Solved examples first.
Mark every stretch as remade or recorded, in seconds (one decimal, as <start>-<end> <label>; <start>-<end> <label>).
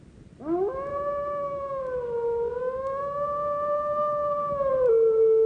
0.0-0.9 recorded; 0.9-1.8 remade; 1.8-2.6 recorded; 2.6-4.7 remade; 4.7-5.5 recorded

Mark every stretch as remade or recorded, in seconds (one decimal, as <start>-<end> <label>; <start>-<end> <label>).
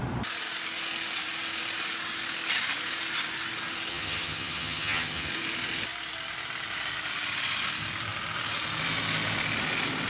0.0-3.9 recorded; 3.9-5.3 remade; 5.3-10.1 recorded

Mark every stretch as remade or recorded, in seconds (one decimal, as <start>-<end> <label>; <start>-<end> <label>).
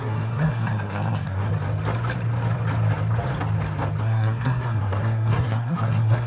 0.0-1.5 remade; 1.5-4.0 recorded; 4.0-6.3 remade